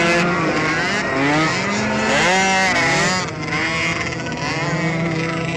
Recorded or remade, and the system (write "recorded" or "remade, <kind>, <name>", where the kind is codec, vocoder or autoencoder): recorded